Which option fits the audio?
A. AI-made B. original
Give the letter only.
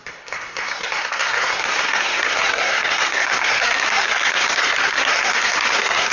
A